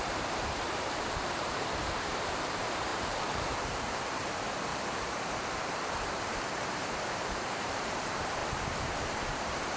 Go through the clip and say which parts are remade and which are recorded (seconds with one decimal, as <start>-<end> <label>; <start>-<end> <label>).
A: 0.0-4.7 remade; 4.7-5.4 recorded; 5.4-9.8 remade